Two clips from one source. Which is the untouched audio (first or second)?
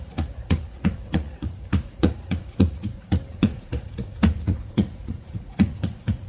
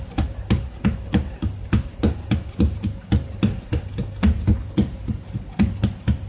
second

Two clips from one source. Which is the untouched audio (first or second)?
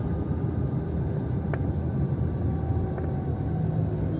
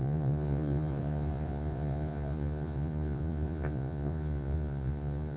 first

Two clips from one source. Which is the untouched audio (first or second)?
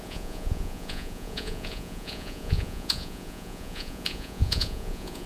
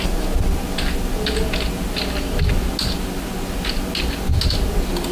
second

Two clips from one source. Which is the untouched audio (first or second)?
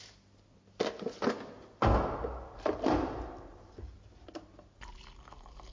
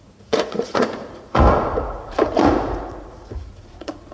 first